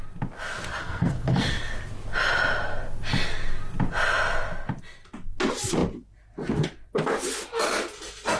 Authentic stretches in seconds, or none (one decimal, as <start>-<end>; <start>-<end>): 0.0-0.8; 1.6-8.4